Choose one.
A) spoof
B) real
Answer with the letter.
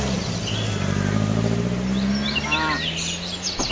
B